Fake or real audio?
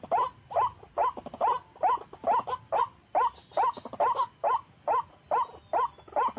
real